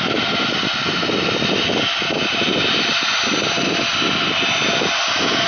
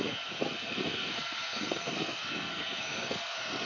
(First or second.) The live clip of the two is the first